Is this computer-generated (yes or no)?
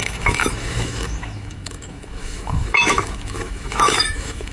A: yes